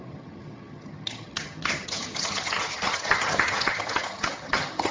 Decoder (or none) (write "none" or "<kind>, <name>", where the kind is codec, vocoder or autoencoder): vocoder, HiFi-GAN